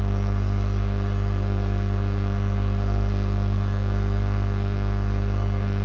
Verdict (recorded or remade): remade